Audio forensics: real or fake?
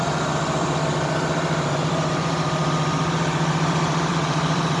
fake